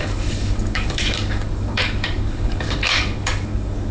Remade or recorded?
remade